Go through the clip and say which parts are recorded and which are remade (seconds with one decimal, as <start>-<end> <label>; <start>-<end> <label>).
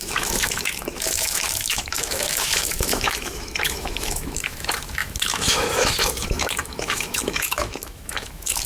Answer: 0.0-8.7 remade